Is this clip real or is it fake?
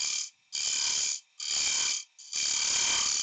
real